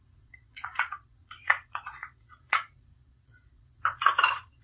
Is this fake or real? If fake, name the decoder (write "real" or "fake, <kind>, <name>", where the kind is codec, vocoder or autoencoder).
fake, vocoder, Vocos